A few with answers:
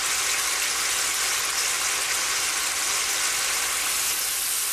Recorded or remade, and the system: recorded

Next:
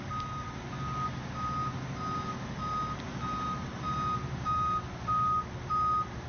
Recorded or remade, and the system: recorded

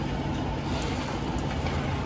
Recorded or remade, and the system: recorded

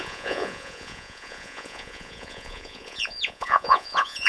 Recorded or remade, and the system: remade, vocoder, Vocos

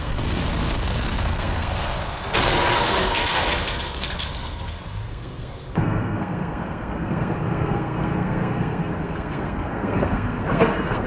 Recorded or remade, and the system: remade, codec, SNAC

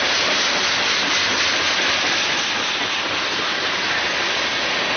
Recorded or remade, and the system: recorded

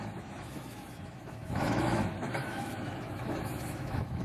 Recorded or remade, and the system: remade, autoencoder, DAC-VAE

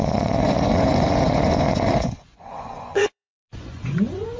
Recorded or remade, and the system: remade, vocoder, Vocos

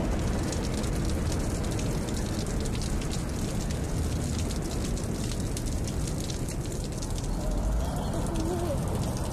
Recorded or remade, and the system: recorded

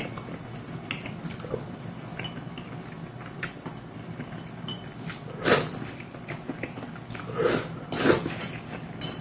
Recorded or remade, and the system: recorded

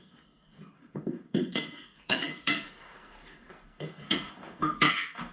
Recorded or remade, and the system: remade, codec, SNAC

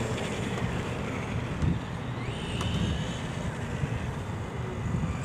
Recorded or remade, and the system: recorded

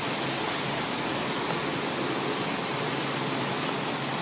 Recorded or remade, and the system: recorded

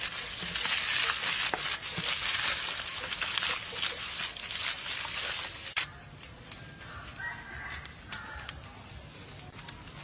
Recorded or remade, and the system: recorded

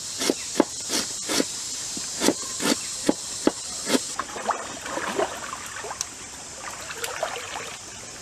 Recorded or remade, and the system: recorded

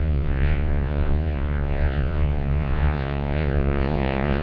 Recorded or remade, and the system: remade, vocoder, Vocos